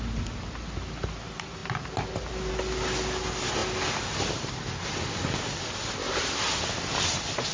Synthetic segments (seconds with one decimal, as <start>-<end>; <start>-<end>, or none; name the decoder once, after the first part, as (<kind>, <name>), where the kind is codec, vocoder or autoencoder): none

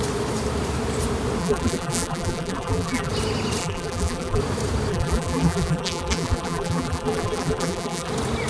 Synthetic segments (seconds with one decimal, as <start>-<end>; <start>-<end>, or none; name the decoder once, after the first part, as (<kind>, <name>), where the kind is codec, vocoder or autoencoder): 1.4-3.1 (vocoder, BigVGAN v2); 3.6-4.4; 4.9-8.1

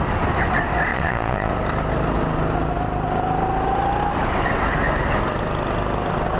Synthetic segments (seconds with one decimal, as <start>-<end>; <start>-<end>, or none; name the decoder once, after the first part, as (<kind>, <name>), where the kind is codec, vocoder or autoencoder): 0.9-1.5 (vocoder, Vocos)

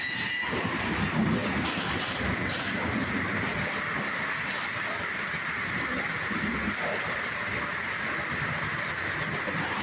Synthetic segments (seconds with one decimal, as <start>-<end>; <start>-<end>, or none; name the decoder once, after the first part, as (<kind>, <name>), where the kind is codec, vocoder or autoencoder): none

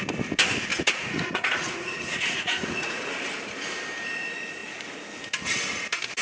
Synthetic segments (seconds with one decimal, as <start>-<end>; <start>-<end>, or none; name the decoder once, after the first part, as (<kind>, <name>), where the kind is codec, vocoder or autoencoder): 0.7-3.1 (vocoder, Vocos)

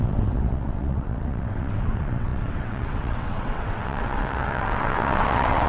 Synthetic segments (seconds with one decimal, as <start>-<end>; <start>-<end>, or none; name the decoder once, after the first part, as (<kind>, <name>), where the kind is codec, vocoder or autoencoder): 0.0-5.7 (vocoder, WaveNeXt)

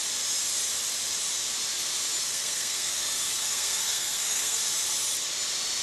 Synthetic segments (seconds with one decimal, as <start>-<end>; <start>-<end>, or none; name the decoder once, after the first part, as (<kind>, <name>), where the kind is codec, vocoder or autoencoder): 2.2-4.6 (codec, SNAC)